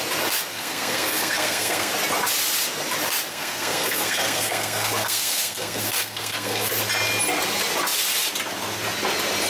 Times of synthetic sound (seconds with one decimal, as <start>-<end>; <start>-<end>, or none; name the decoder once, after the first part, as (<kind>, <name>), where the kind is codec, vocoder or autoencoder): 0.5-1.9 (codec, SNAC); 3.3-6.7

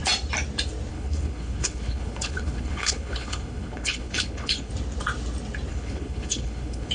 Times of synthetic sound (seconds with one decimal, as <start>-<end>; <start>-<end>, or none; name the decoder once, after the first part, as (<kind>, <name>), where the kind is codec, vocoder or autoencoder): 0.9-4.7 (codec, HILCodec); 5.7-6.9

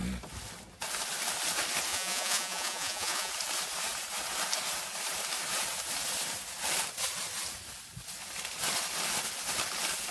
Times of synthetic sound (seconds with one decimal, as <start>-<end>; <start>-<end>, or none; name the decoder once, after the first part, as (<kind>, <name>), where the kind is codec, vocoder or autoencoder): 1.9-3.3 (vocoder, Vocos)

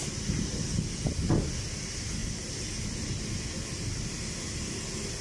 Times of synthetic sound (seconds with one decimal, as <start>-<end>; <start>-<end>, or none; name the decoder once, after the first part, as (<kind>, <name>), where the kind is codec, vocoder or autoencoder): none

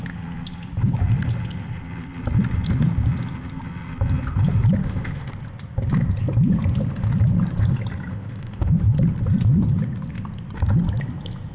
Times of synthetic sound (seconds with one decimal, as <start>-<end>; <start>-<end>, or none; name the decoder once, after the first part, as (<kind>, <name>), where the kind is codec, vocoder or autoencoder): 4.8-5.3 (autoencoder, DAC-VAE); 8.1-8.8

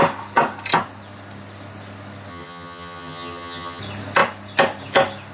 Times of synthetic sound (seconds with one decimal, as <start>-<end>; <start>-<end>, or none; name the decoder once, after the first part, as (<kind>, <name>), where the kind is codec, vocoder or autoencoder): 2.3-3.8 (vocoder, HiFi-GAN)

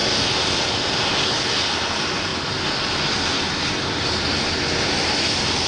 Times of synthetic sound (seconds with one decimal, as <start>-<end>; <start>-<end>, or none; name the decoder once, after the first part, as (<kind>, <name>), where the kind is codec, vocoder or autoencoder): none